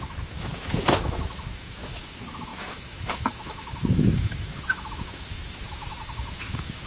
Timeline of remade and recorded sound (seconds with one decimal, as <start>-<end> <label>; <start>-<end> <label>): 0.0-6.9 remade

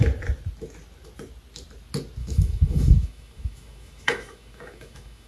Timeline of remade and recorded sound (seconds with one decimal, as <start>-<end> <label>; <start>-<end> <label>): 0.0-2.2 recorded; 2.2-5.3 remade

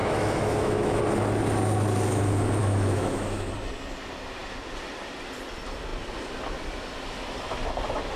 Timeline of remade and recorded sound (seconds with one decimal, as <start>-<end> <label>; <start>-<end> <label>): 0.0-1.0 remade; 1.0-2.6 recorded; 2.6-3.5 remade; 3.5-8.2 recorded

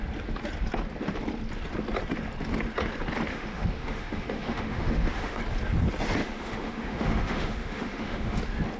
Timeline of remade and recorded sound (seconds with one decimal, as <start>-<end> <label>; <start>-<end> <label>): 0.0-3.3 recorded; 3.3-5.4 remade; 5.4-6.2 recorded; 6.2-8.4 remade; 8.4-8.8 recorded

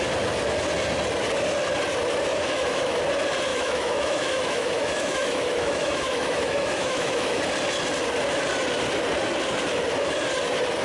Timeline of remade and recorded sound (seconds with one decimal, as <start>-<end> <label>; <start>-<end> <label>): 0.0-2.3 recorded; 2.3-3.0 remade; 3.0-3.5 recorded; 3.5-7.4 remade; 7.4-10.8 recorded

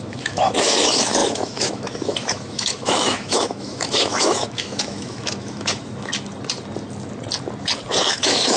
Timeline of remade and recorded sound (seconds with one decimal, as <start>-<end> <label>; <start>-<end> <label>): 0.0-6.1 remade; 6.1-8.1 recorded; 8.1-8.6 remade

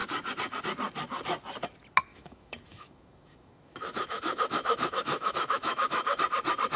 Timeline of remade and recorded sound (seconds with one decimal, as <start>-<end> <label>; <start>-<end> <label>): 0.0-2.1 recorded; 2.1-6.2 remade; 6.2-6.8 recorded

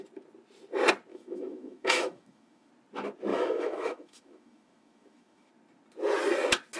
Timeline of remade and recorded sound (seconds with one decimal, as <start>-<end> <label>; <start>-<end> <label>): 0.0-1.1 recorded; 1.1-2.7 remade; 2.7-3.3 recorded; 3.3-5.5 remade; 5.5-6.8 recorded